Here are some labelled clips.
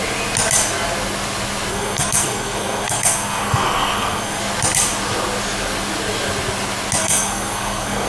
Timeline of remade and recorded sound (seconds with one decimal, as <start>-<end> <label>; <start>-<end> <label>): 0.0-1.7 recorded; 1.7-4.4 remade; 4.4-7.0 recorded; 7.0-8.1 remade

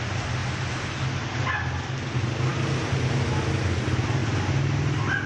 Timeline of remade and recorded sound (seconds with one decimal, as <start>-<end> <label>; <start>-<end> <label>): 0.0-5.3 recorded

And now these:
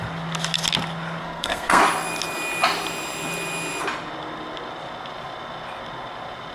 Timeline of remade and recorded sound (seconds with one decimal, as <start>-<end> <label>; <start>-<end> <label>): 0.0-1.2 recorded; 1.2-1.8 remade; 1.8-6.5 recorded